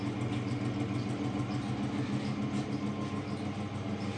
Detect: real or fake real